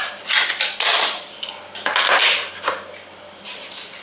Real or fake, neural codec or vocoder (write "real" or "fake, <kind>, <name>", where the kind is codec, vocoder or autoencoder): real